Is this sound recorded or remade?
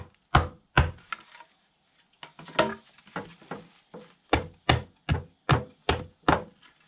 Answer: recorded